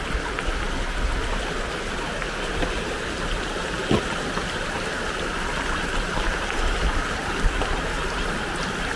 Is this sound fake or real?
real